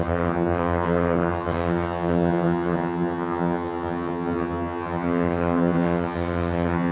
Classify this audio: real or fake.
fake